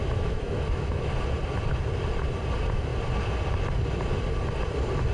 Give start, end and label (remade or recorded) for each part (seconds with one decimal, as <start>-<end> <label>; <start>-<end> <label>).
0.0-1.1 remade; 1.1-5.1 recorded